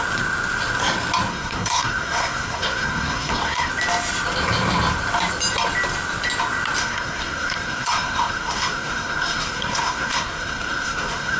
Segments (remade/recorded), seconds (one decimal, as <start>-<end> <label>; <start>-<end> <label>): 0.0-1.3 recorded; 1.3-3.7 remade; 3.7-6.8 recorded; 6.8-11.4 remade